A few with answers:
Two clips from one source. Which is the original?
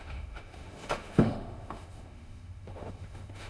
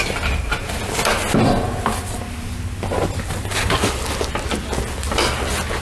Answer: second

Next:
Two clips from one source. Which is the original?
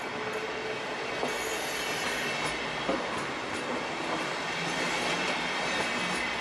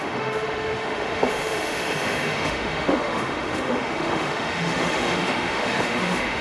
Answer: first